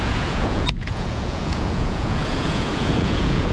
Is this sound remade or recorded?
remade